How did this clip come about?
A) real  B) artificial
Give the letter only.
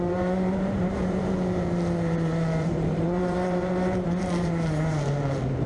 B